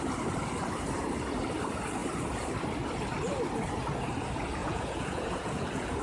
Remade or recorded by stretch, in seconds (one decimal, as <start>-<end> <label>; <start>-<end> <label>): 0.0-4.6 recorded; 4.6-6.0 remade